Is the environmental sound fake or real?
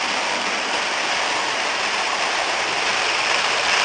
fake